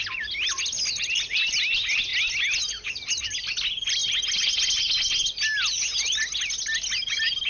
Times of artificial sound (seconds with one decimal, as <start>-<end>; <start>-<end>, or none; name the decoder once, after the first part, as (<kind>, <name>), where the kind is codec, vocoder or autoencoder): none